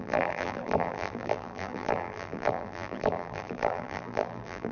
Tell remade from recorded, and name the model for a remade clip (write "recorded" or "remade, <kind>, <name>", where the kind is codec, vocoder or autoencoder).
remade, vocoder, BigVGAN v2